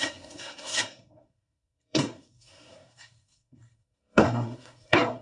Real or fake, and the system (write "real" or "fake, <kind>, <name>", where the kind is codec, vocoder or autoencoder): fake, codec, SNAC